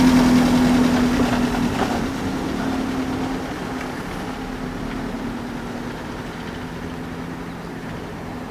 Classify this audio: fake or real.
real